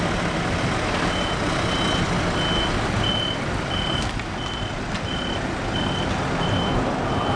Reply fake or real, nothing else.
real